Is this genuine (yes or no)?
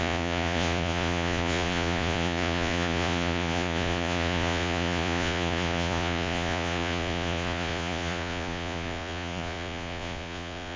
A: no